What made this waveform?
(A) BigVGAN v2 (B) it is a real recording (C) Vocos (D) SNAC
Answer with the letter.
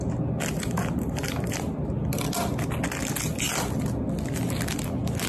B